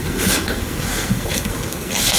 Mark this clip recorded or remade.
remade